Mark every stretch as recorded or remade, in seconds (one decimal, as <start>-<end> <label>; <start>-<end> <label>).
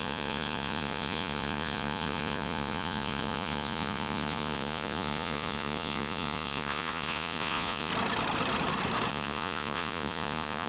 0.0-7.9 remade; 7.9-9.1 recorded; 9.1-10.7 remade